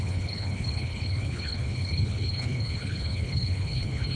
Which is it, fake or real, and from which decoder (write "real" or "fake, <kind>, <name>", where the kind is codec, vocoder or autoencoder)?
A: fake, codec, HILCodec